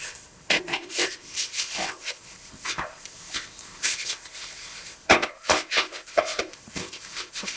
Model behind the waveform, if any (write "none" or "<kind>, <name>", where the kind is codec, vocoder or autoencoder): codec, ZipCodec